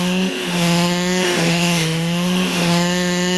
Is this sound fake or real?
fake